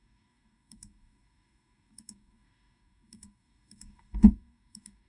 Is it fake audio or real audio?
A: fake